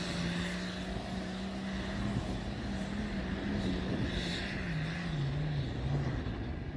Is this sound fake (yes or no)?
no